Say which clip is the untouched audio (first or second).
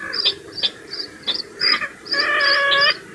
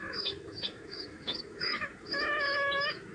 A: first